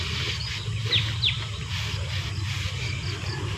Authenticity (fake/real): real